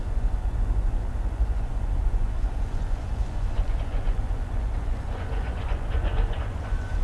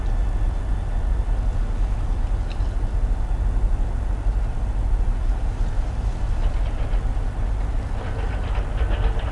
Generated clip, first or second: first